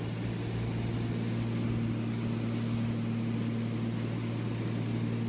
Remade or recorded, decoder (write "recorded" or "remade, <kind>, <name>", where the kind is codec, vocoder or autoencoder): recorded